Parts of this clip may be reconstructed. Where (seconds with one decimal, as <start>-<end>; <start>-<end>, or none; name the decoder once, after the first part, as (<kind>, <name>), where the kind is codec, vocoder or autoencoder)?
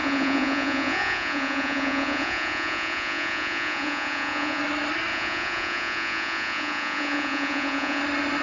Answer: 0.0-4.6 (vocoder, Vocos); 5.1-8.0